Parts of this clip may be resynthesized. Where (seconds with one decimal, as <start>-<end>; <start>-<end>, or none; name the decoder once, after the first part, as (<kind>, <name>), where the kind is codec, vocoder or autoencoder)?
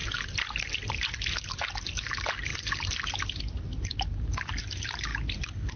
none